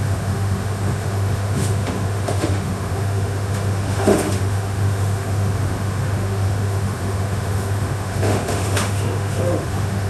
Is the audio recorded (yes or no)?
no